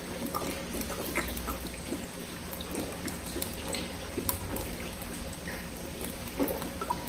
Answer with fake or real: real